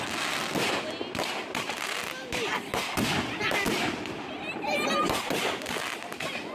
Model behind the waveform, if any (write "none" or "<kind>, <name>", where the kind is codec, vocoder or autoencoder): none